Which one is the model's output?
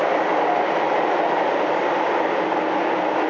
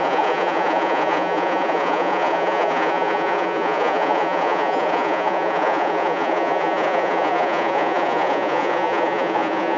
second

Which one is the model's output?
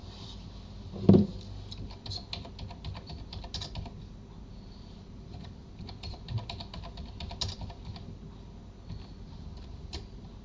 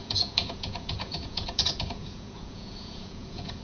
second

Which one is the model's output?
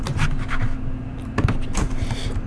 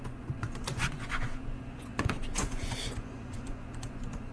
second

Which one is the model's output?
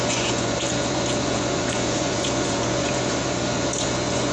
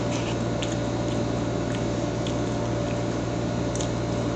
first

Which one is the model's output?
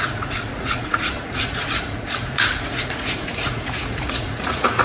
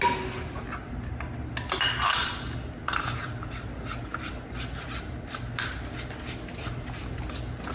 first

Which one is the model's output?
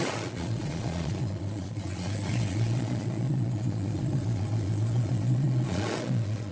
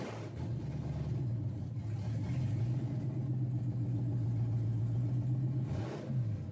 first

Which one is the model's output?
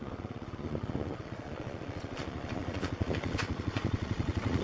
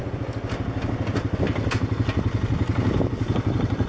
first